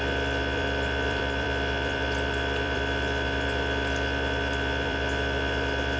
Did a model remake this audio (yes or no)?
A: yes